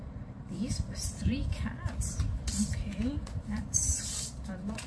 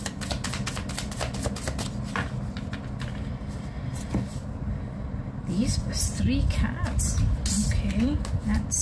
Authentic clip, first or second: second